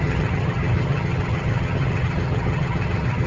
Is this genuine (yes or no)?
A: no